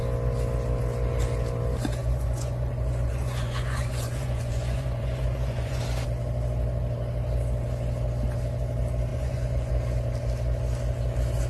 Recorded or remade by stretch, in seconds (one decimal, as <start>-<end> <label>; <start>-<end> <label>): 0.0-2.0 recorded; 2.0-5.8 remade; 5.8-9.1 recorded; 9.1-9.7 remade; 9.7-11.5 recorded